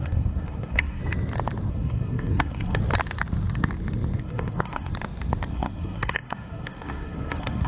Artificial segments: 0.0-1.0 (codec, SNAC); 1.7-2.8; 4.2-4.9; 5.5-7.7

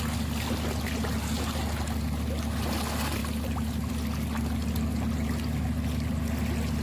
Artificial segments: none